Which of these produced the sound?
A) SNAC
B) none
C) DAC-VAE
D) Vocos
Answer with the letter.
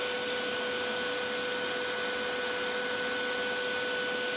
B